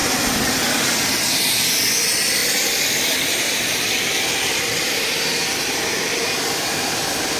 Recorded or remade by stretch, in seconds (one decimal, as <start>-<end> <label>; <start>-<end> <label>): 0.0-7.4 remade